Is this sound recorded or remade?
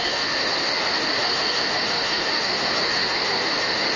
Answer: remade